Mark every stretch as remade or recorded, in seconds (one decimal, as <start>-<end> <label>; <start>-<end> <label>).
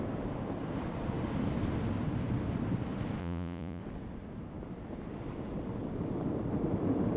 0.0-3.2 recorded; 3.2-3.8 remade; 3.8-7.2 recorded